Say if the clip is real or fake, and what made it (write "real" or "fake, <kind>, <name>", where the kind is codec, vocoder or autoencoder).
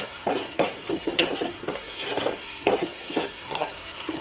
fake, codec, SNAC